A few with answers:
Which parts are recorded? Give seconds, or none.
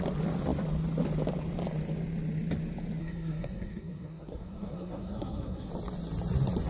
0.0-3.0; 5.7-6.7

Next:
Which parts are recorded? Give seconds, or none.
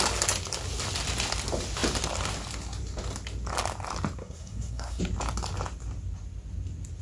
0.0-4.2; 5.0-7.0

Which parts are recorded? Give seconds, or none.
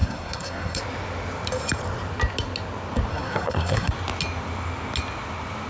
0.8-3.1; 3.9-5.7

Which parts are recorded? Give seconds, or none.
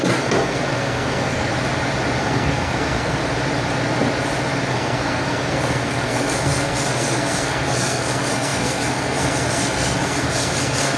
1.5-2.2; 3.2-4.7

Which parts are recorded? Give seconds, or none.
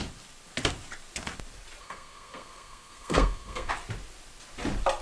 0.0-1.8; 3.7-5.0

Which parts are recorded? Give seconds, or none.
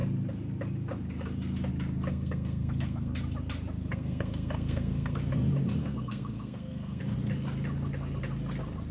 0.0-2.1; 3.2-3.9; 5.2-5.8; 7.0-8.9